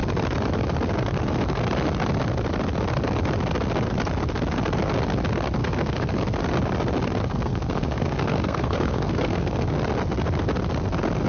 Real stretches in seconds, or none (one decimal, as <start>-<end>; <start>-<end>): 0.0-5.6; 6.1-7.3; 9.7-11.3